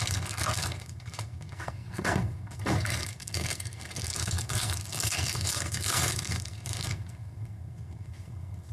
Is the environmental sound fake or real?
fake